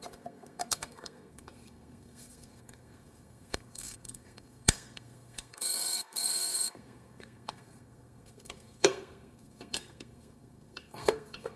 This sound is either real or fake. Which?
fake